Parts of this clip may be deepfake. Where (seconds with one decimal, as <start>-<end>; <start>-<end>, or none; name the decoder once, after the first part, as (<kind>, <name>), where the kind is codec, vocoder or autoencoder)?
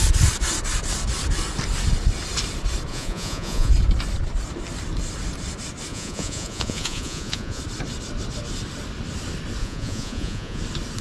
2.9-3.7 (vocoder, Vocos); 5.9-7.6; 9.6-10.6